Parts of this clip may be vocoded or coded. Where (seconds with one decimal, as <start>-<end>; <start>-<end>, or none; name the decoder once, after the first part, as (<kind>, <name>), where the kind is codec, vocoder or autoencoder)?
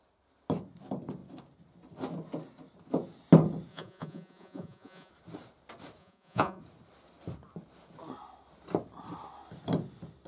3.7-5.1 (vocoder, Vocos); 6.0-6.6